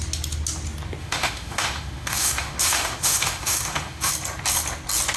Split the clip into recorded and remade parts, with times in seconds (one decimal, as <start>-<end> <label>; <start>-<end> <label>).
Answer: 0.0-1.0 recorded; 1.0-4.1 remade; 4.1-5.2 recorded